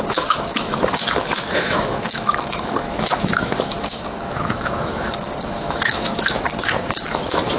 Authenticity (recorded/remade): remade